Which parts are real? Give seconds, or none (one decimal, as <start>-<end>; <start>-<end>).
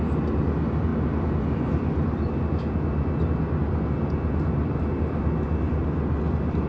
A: 0.0-6.7